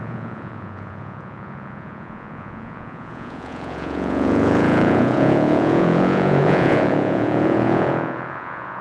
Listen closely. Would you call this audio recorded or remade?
remade